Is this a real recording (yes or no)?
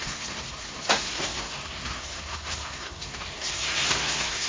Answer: no